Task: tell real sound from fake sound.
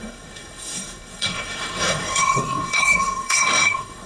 fake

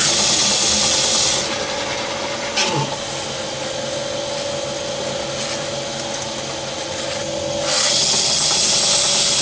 real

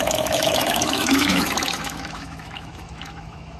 fake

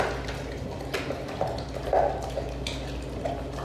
real